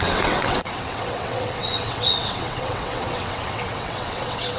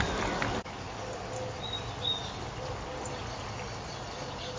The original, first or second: second